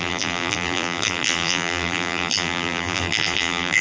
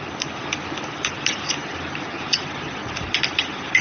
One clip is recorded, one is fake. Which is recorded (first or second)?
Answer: second